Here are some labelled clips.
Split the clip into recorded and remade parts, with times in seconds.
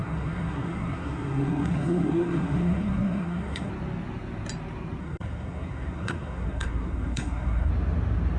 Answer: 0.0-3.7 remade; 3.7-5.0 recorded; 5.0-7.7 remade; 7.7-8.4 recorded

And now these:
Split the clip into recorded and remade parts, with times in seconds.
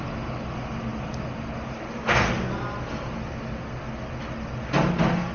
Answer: 0.0-5.3 recorded